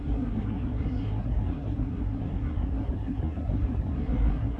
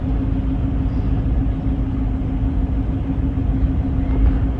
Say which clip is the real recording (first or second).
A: second